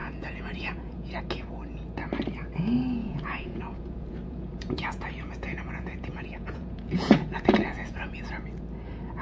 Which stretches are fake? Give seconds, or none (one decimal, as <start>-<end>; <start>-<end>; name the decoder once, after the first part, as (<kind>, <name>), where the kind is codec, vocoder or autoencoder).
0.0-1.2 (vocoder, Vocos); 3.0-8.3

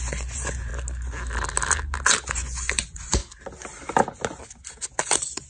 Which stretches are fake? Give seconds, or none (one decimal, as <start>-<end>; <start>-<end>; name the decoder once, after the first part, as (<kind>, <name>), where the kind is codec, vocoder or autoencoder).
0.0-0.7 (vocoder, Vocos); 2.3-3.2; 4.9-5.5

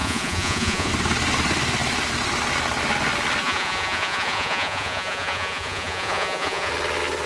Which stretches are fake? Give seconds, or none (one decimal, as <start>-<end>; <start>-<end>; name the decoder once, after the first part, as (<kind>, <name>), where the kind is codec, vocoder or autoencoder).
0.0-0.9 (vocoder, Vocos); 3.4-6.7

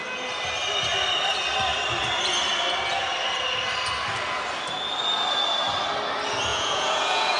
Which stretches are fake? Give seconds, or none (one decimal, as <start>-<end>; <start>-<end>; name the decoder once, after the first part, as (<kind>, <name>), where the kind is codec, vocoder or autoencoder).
6.5-7.4 (vocoder, Vocos)

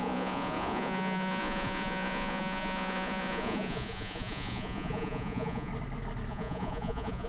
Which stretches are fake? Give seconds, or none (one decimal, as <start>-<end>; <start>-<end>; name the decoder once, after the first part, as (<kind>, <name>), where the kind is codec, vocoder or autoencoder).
0.0-5.7 (vocoder, Vocos); 6.3-7.3

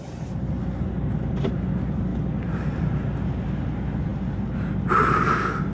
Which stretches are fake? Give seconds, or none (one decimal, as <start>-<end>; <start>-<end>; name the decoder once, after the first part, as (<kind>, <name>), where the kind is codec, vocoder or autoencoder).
none

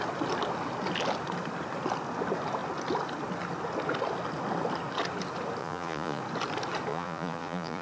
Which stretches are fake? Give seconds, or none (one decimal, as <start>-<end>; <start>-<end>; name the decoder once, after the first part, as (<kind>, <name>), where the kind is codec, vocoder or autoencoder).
5.6-6.2 (vocoder, Vocos); 6.9-7.8